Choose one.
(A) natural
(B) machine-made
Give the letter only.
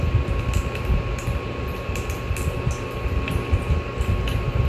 A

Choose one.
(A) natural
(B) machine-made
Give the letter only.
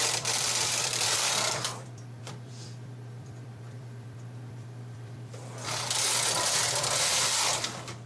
B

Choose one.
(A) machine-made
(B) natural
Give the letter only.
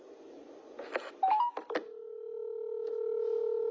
B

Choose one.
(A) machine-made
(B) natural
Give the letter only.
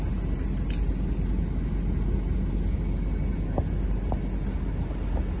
B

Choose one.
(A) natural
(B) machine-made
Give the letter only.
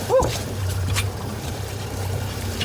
B